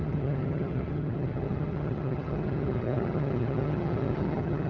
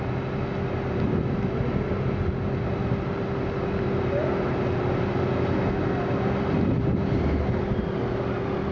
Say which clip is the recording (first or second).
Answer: second